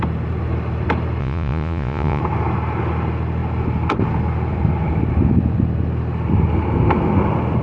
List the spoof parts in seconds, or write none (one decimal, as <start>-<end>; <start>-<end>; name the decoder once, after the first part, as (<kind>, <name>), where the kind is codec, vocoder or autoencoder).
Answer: 1.2-2.2 (vocoder, Vocos)